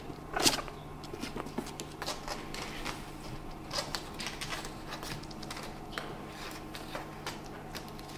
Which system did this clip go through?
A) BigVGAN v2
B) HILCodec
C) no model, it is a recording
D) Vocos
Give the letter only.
C